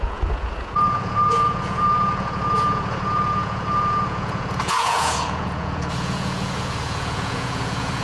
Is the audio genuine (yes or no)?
no